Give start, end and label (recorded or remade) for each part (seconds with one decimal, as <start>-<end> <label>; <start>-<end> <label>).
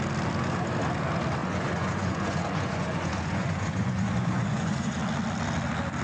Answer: 0.0-1.4 recorded; 1.4-5.0 remade; 5.0-6.0 recorded